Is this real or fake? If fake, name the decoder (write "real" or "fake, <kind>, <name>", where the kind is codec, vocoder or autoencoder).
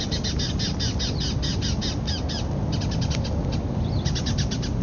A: real